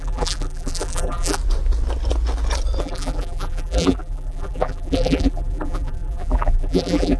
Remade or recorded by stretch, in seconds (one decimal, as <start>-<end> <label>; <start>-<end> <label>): 0.0-1.4 remade; 1.4-2.8 recorded; 2.8-7.2 remade

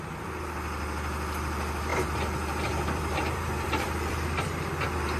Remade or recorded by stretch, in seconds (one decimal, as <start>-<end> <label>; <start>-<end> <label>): 0.0-1.9 recorded; 1.9-4.7 remade; 4.7-5.2 recorded

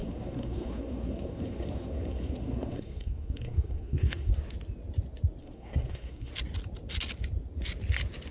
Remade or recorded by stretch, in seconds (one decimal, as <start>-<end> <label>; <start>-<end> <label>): 0.0-4.3 remade; 4.3-5.4 recorded; 5.4-6.3 remade; 6.3-8.3 recorded

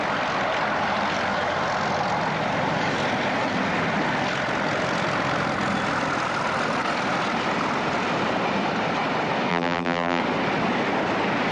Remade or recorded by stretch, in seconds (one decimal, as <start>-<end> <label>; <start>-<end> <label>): 0.0-9.5 recorded; 9.5-10.2 remade; 10.2-11.5 recorded